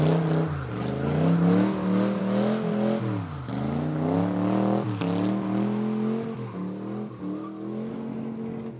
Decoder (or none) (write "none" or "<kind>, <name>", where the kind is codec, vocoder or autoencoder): none